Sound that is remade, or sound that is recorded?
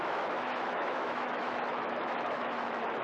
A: remade